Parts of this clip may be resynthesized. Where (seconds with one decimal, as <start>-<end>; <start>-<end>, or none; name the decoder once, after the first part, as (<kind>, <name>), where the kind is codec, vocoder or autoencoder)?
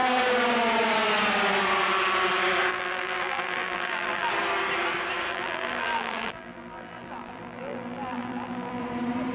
2.7-4.3 (vocoder, BigVGAN v2); 5.3-8.8